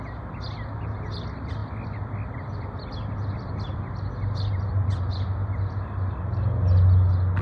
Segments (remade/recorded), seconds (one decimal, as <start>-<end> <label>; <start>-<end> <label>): 0.0-7.4 recorded